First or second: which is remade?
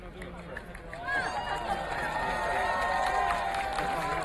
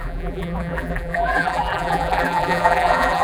second